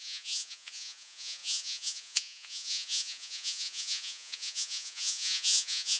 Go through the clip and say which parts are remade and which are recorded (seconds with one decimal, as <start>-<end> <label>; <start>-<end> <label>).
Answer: 0.0-6.0 remade